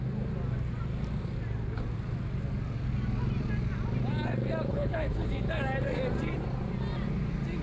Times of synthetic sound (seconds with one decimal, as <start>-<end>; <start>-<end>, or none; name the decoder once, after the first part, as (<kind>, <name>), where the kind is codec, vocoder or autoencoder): 4.7-5.3 (codec, HILCodec)